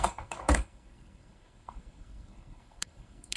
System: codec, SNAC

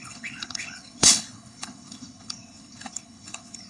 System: codec, HILCodec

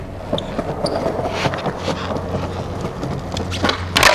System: none